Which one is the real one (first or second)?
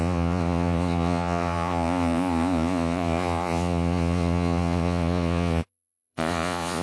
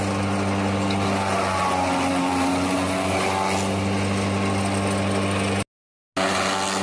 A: second